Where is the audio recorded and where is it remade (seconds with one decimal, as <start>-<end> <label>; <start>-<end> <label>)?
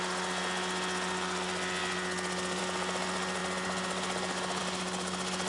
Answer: 0.0-5.5 recorded